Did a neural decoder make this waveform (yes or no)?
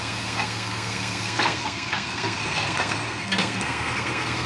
yes